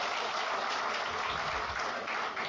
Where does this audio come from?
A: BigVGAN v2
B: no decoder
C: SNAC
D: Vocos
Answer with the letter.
B